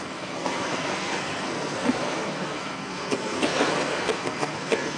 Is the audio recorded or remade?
remade